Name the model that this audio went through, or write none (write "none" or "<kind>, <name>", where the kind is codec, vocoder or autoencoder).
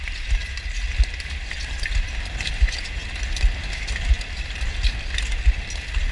none